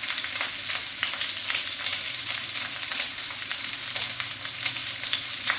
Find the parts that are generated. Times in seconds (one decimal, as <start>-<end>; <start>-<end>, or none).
1.9-3.6; 4.8-5.6